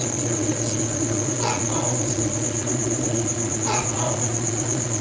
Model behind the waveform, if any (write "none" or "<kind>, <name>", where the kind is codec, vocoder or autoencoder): vocoder, Vocos